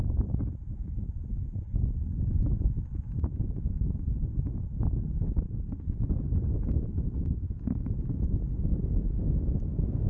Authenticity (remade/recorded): recorded